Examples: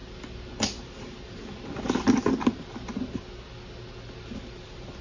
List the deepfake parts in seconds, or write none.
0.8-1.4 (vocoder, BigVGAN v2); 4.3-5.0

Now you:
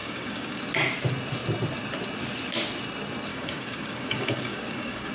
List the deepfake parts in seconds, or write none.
0.0-0.6 (codec, DAC); 3.3-5.1

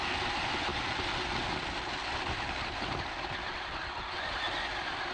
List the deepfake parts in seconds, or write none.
none

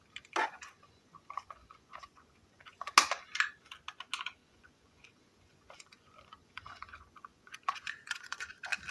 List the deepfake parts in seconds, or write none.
0.4-2.9 (vocoder, Vocos); 4.4-8.5

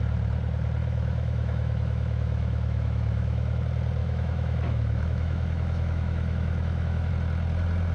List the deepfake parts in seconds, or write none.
0.8-3.6 (autoencoder, DAC-VAE); 4.0-7.1